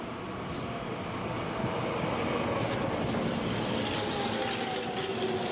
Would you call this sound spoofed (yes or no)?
no